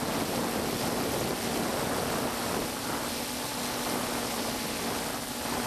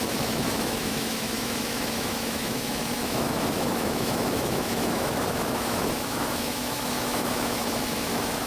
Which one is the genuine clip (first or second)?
first